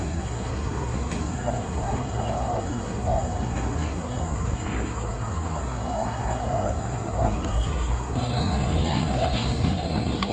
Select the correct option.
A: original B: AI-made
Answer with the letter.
B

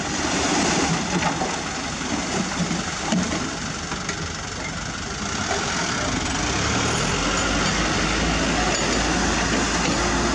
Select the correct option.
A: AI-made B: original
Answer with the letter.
B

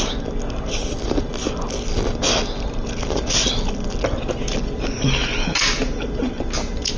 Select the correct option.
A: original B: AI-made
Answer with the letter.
A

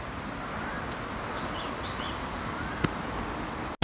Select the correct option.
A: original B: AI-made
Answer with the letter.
A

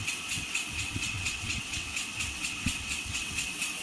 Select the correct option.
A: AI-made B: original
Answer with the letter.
A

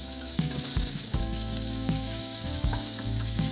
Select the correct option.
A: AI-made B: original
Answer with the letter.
A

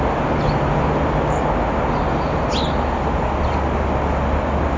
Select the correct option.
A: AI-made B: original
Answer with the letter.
B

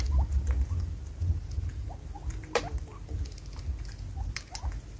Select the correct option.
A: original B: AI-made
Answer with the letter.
A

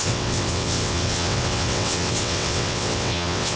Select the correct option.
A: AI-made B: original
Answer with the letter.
A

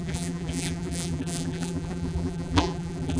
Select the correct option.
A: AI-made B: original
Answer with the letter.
A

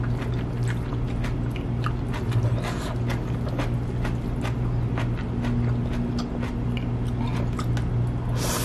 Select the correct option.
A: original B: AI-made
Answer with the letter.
A